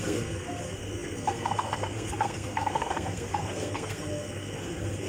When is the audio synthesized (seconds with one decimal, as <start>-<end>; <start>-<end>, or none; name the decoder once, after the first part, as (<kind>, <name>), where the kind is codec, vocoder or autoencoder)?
0.0-5.1 (codec, SNAC)